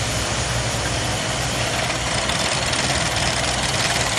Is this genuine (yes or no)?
no